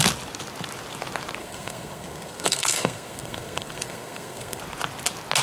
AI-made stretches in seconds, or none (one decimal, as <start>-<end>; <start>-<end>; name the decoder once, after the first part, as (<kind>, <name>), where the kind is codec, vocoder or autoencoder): 1.4-4.6 (codec, SNAC)